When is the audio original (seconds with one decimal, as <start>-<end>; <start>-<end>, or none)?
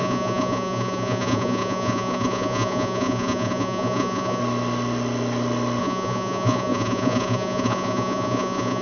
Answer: 4.4-5.8